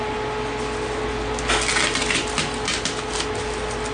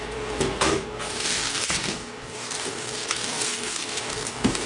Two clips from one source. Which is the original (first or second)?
first